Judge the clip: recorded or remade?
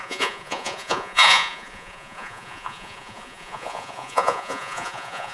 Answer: remade